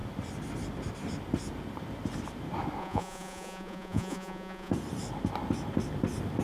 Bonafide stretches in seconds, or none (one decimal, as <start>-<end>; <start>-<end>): 0.0-2.8; 4.7-6.4